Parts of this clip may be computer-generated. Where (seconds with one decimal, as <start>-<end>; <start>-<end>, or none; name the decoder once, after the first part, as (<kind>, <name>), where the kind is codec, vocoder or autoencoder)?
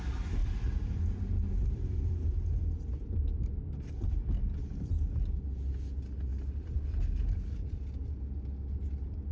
0.4-2.1 (vocoder, BigVGAN v2); 2.9-4.9; 6.3-7.0